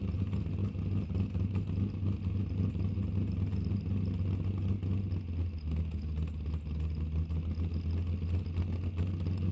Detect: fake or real real